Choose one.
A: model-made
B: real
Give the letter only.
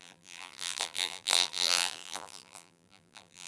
A